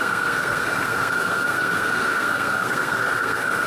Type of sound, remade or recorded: remade